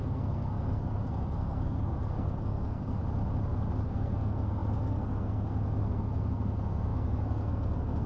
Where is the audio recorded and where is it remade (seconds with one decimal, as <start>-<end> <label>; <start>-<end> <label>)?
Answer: 0.0-3.0 remade; 3.0-3.8 recorded; 3.8-8.1 remade